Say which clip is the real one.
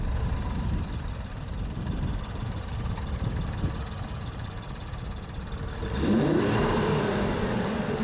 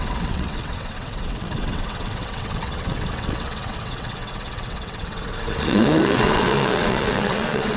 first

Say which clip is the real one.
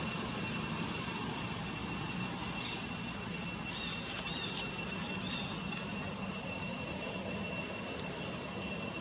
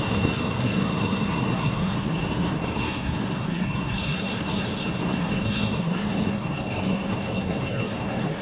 first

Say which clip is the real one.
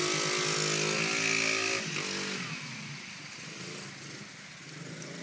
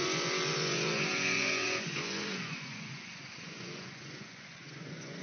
first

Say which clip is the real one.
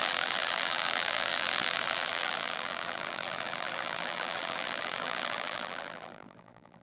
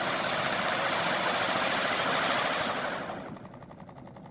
second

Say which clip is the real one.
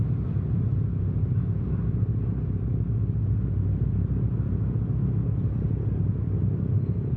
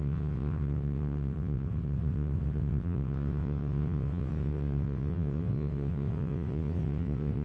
first